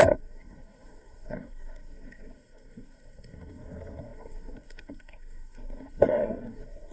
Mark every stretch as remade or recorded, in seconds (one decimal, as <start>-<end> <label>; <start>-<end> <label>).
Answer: 0.0-6.9 remade